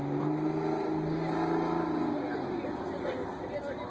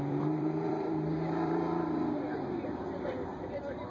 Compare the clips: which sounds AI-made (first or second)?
second